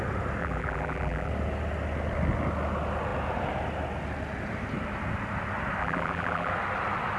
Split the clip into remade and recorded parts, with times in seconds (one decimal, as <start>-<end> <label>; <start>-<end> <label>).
0.0-0.4 recorded; 0.4-1.3 remade; 1.3-5.8 recorded; 5.8-6.5 remade; 6.5-7.2 recorded